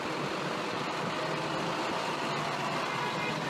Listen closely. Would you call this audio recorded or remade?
recorded